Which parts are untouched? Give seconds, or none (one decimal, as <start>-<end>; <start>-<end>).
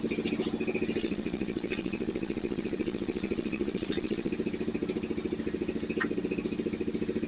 0.0-1.0; 4.3-7.3